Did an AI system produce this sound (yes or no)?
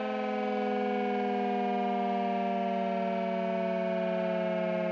no